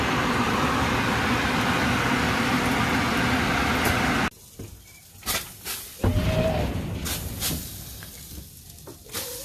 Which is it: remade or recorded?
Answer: recorded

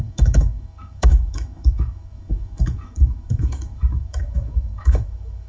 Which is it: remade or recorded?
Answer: remade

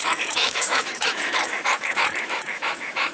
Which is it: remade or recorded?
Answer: remade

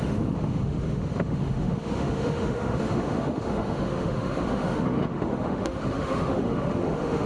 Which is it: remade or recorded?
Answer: remade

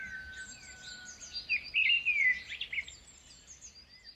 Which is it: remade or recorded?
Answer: recorded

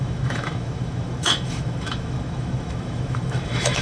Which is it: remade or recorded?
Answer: remade